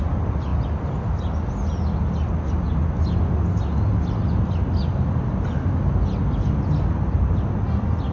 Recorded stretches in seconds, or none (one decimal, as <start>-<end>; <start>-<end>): 0.0-8.1